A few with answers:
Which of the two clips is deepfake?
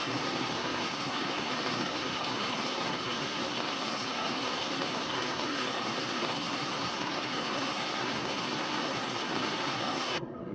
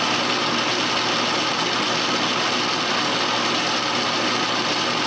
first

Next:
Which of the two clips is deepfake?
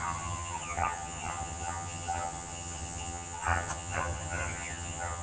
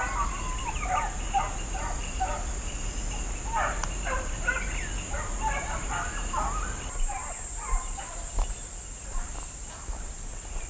first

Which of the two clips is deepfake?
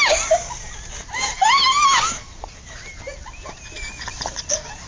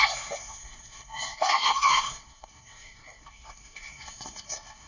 second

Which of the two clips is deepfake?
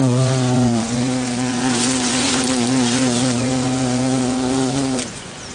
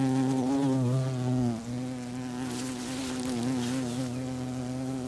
first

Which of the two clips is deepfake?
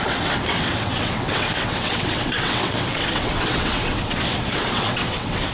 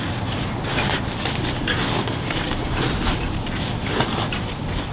first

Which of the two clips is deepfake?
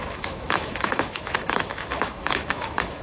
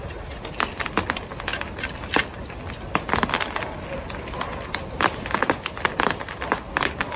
first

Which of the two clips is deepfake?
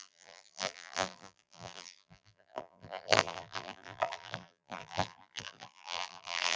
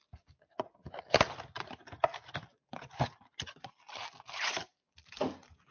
first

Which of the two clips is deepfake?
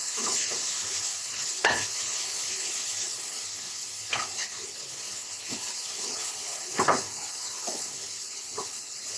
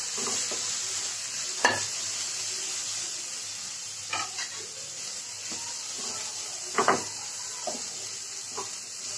first